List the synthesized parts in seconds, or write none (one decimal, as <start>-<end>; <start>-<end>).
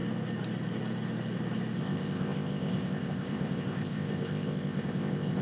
1.8-5.4